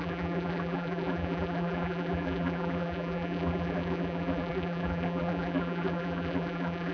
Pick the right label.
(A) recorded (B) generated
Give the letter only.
B